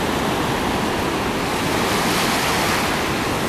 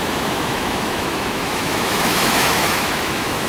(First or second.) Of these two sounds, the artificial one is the second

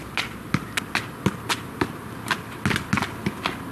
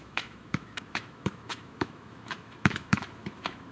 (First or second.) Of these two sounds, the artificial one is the second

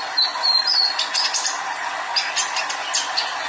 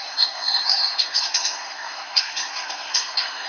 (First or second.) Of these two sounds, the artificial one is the second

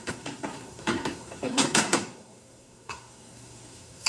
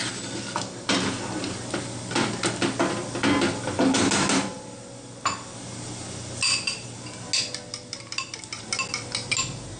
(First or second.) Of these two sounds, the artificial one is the first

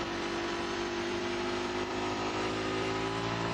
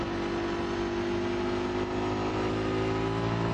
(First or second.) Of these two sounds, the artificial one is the first